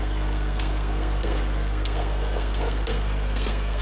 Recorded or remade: remade